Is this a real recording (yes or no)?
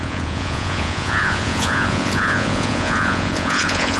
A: no